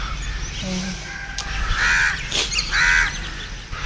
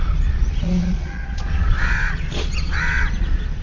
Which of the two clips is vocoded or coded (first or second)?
second